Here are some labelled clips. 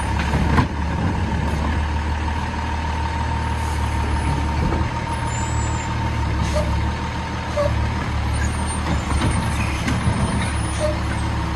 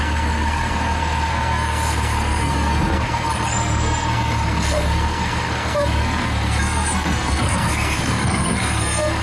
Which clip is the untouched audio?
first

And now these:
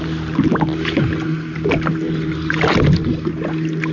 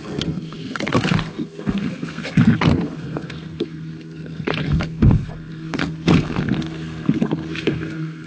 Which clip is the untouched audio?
first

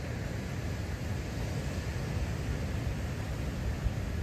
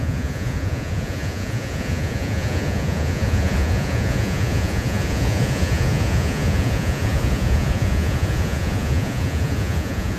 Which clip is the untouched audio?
first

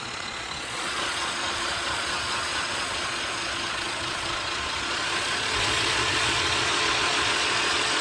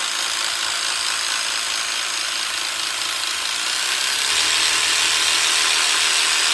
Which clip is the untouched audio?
second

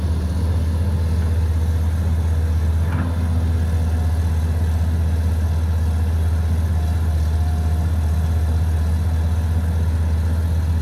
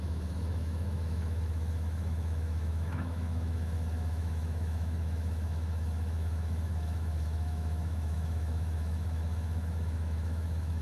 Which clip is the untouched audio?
first